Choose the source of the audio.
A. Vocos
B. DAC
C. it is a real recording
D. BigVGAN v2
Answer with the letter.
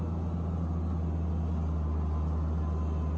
C